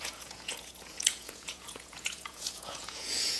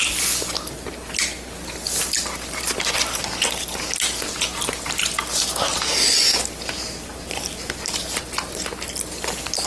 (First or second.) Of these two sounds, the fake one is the first